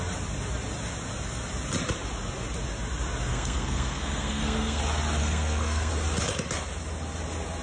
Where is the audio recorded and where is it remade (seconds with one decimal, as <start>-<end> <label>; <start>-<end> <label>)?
0.0-3.3 recorded; 3.3-4.8 remade; 4.8-5.2 recorded; 5.2-5.9 remade; 5.9-7.6 recorded